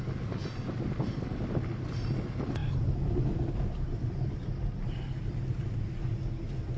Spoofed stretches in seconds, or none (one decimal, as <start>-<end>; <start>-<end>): none